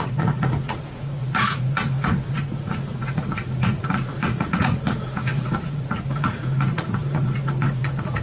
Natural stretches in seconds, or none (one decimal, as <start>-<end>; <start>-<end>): none